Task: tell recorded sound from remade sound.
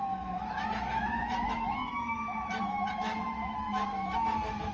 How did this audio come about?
remade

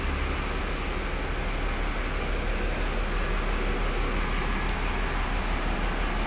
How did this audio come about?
recorded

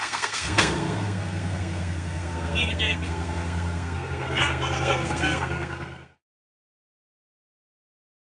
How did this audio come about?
remade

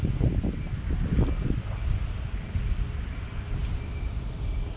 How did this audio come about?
recorded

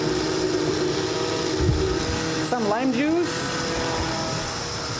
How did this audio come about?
recorded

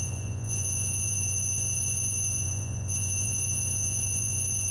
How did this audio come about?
remade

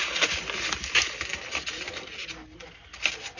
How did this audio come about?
recorded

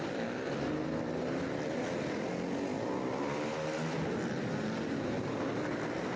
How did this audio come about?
recorded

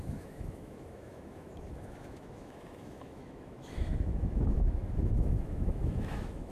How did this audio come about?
remade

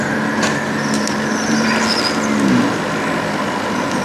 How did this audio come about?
recorded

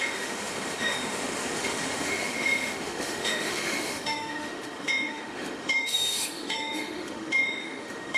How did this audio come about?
remade